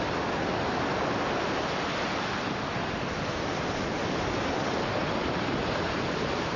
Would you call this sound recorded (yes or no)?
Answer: yes